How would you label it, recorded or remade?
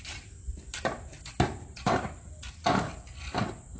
recorded